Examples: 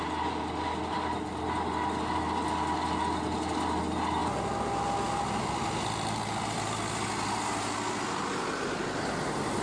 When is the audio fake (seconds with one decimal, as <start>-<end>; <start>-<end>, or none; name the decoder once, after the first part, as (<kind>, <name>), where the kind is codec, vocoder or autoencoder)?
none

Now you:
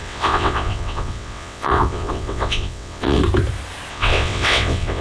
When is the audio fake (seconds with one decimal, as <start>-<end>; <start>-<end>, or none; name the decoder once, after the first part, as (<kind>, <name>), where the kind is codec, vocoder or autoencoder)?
0.0-3.2 (vocoder, WaveNeXt); 3.9-5.0

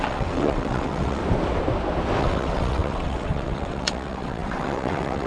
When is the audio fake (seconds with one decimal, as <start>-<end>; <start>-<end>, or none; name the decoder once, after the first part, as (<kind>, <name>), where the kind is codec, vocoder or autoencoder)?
0.0-1.2 (vocoder, WaveNeXt); 2.2-5.3